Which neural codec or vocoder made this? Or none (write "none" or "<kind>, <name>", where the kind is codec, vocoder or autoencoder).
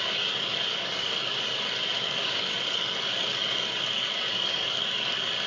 codec, DAC